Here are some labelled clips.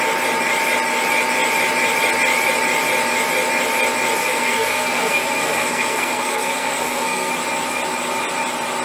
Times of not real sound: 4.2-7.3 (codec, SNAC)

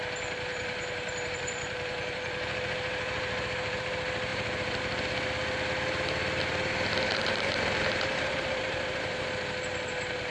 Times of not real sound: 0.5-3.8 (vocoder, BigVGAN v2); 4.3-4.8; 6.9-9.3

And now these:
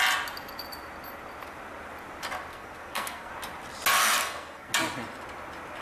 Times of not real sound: 2.5-3.3 (codec, SNAC); 4.2-4.7

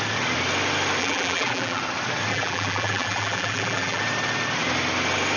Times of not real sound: 1.0-1.8 (vocoder, BigVGAN v2); 2.3-4.0

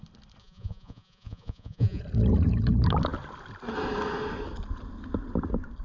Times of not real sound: 0.4-2.0 (vocoder, Vocos)